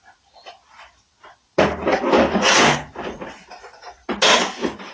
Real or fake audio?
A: real